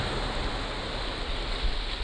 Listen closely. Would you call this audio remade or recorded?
recorded